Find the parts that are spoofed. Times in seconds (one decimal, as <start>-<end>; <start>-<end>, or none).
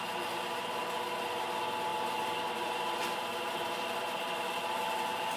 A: 1.9-5.0